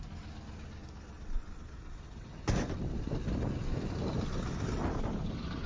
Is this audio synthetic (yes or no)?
no